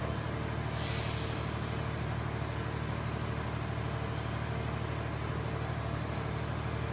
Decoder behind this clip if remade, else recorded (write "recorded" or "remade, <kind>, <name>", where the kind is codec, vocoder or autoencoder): recorded